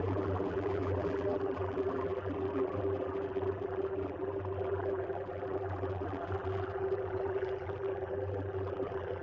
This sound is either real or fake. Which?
fake